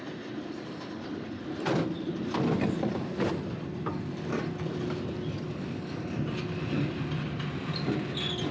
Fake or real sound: real